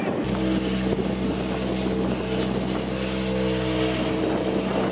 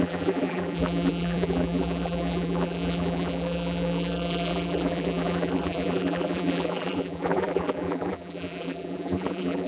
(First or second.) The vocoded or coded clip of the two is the second